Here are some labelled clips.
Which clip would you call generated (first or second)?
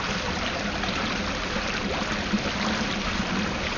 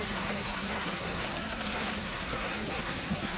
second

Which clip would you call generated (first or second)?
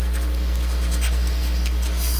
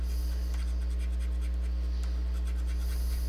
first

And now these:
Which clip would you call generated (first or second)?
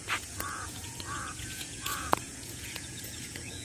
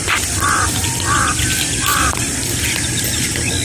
first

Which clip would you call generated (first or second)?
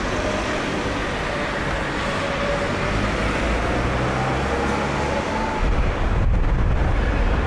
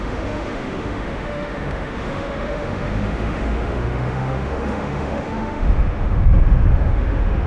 second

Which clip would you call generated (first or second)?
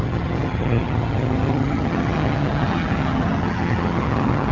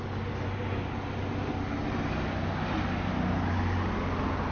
first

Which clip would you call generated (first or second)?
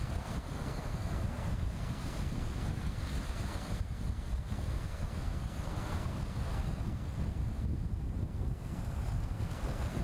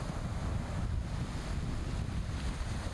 first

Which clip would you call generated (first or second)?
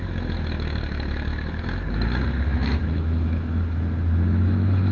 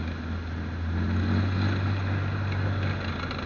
first